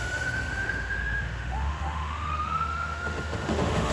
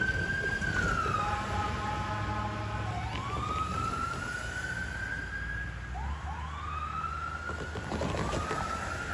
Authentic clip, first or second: second